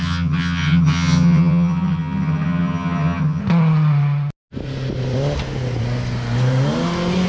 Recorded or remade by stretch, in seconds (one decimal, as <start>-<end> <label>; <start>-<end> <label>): 0.0-3.4 remade; 3.4-7.3 recorded